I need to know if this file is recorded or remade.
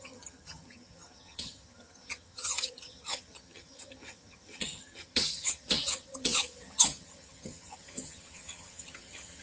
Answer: remade